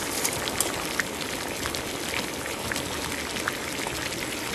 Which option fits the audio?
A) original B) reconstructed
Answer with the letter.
A